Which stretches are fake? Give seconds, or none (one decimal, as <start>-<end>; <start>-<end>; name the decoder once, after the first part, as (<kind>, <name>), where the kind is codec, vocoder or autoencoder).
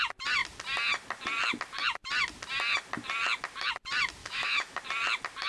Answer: 4.2-4.8 (autoencoder, DAC-VAE)